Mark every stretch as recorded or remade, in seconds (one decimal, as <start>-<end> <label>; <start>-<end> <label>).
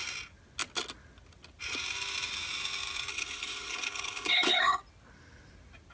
0.0-3.1 recorded; 3.1-4.8 remade; 4.8-5.9 recorded